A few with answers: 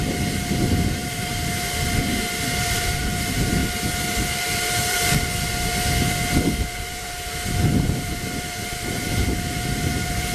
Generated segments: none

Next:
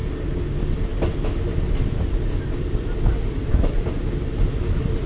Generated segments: none

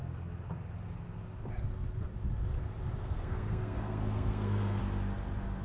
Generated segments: 3.0-4.8